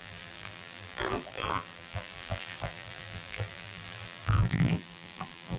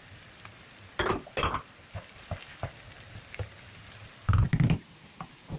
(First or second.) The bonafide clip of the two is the second